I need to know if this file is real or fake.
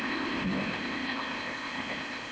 fake